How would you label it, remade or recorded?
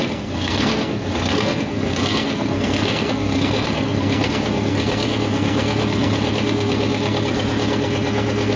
remade